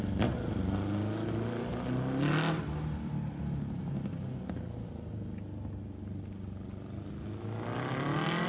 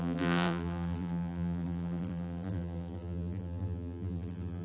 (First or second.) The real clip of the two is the first